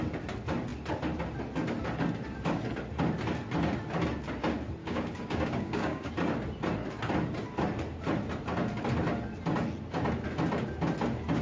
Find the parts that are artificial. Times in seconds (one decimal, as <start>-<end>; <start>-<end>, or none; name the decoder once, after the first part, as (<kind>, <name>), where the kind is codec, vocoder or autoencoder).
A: 4.8-6.1 (codec, DAC)